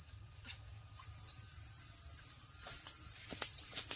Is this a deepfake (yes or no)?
no